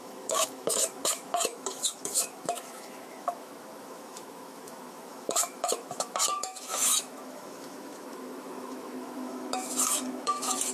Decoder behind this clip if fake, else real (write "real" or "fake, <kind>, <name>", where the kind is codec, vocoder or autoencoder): fake, autoencoder, DAC-VAE